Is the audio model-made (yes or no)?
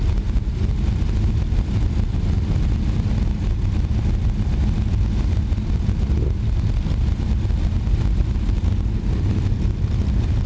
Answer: no